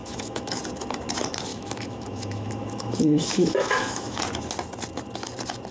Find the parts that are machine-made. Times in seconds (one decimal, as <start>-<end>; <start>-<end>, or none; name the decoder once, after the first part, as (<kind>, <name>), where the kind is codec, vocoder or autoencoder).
0.0-0.6 (autoencoder, DAC-VAE); 1.5-4.2